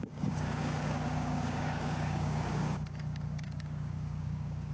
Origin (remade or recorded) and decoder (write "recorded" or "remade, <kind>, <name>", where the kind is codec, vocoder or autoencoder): remade, codec, DAC